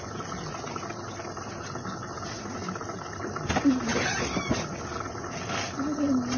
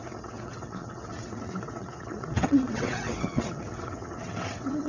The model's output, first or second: second